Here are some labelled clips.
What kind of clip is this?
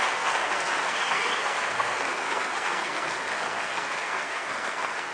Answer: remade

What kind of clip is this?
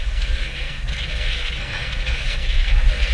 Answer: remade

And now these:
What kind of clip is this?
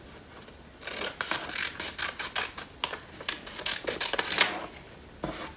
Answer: recorded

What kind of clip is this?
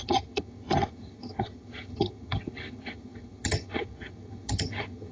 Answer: remade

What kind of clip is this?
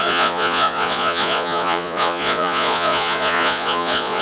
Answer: remade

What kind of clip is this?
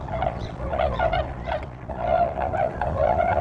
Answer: remade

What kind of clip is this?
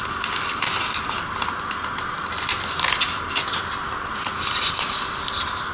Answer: recorded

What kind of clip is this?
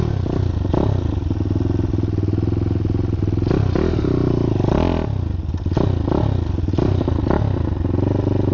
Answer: recorded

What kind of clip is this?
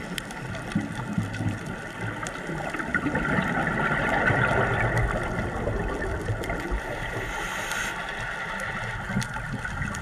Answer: recorded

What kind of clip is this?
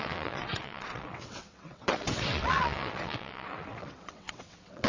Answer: remade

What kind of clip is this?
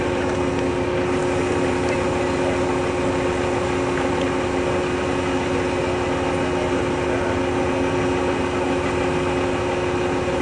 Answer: recorded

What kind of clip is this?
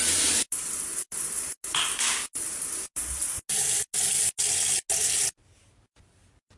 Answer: recorded